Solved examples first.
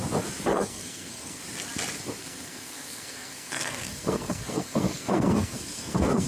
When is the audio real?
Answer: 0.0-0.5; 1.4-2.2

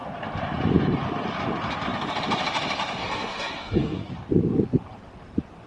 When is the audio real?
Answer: 0.0-3.0; 4.1-5.7

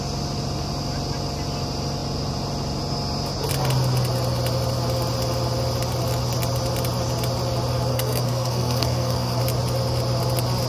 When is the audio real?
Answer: 0.0-7.9; 9.4-10.7

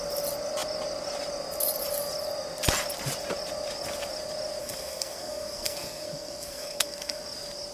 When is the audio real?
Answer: 0.0-4.6; 7.2-7.7

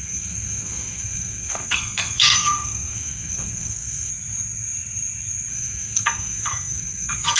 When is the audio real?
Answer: 4.1-5.5

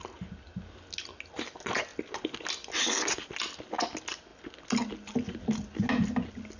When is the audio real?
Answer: 0.0-6.6